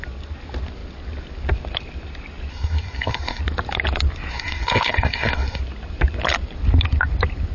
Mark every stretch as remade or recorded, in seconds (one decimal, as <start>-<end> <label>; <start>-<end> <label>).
0.0-2.5 recorded; 2.5-3.4 remade; 3.4-4.3 recorded; 4.3-5.6 remade; 5.6-7.5 recorded